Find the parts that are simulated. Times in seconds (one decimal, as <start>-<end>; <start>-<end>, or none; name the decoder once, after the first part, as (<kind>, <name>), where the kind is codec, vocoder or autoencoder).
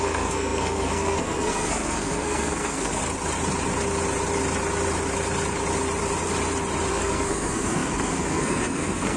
0.0-3.0 (codec, SNAC); 6.9-9.2